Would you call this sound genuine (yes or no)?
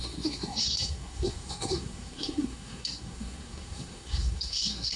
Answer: no